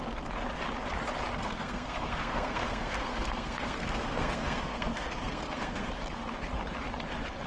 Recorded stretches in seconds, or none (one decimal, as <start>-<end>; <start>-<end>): 0.0-1.4; 5.9-7.5